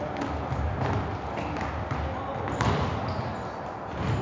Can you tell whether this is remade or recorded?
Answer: recorded